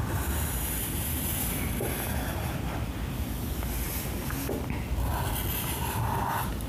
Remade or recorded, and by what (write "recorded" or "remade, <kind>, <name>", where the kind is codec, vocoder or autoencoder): recorded